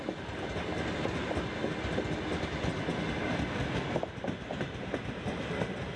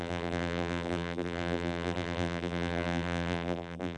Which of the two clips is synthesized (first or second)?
second